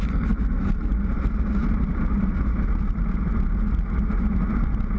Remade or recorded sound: recorded